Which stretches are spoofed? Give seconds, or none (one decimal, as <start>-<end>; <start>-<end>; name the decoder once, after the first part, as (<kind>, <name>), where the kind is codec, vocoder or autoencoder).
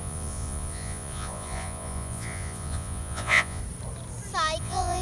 0.0-3.6 (vocoder, Vocos); 4.6-5.0